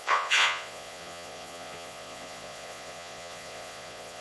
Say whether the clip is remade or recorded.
remade